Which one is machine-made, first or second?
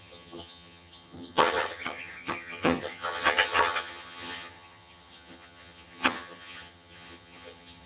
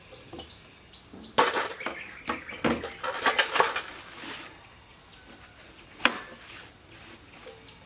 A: first